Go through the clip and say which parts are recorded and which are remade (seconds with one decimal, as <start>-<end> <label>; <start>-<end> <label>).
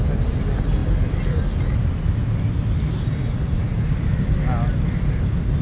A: 0.0-5.6 recorded